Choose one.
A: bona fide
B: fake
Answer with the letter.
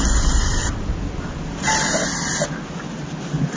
A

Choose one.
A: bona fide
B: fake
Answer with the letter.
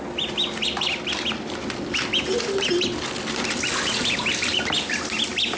A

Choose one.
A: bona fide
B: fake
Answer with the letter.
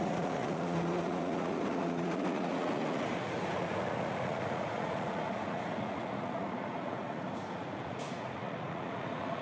B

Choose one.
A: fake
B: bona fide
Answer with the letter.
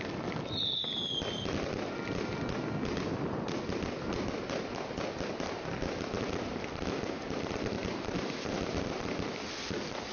B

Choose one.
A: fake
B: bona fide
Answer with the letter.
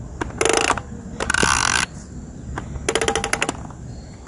B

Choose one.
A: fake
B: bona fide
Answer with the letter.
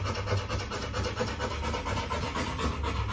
B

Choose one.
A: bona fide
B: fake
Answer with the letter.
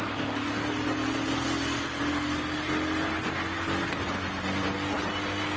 A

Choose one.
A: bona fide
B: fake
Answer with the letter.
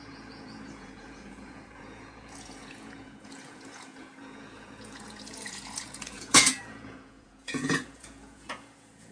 B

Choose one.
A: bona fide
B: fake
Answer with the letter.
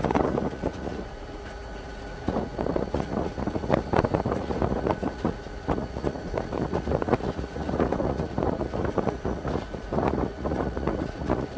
B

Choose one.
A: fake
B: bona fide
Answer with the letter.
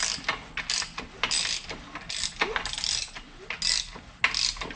B